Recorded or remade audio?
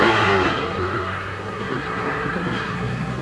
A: remade